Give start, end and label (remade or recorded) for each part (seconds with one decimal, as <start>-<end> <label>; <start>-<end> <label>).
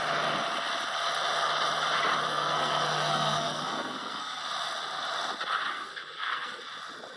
0.0-2.3 recorded; 2.3-4.4 remade; 4.4-5.7 recorded; 5.7-6.6 remade; 6.6-7.2 recorded